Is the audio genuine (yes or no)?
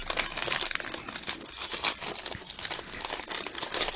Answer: yes